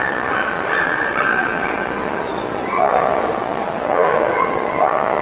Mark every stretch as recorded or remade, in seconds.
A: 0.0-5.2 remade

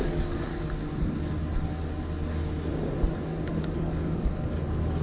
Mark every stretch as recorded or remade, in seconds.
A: 0.0-0.5 remade; 0.5-3.5 recorded; 3.5-5.0 remade

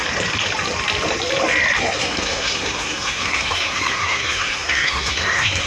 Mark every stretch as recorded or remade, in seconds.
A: 0.0-1.8 recorded; 1.8-5.7 remade